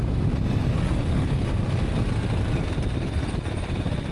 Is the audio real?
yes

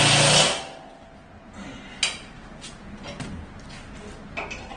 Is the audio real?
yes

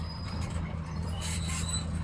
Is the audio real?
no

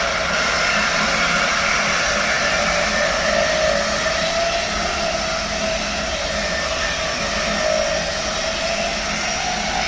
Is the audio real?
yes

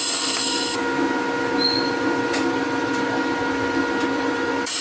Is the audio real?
no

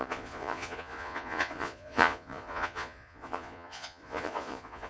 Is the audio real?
no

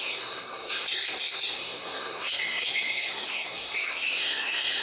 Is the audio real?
no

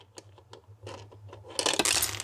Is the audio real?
yes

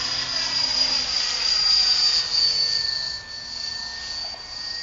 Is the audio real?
yes